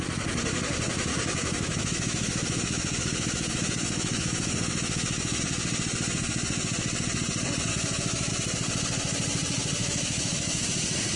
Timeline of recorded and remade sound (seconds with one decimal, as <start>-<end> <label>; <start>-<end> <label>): 0.0-1.1 recorded; 1.1-5.4 remade; 5.4-7.7 recorded; 7.7-8.3 remade; 8.3-9.8 recorded; 9.8-10.6 remade; 10.6-11.2 recorded